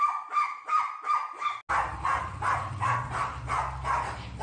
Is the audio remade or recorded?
recorded